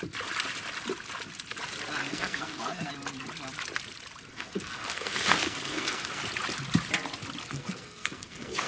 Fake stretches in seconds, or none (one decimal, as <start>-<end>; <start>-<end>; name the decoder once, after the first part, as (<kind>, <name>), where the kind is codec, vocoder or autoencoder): 2.0-2.9 (codec, SNAC); 4.3-6.2; 7.4-8.7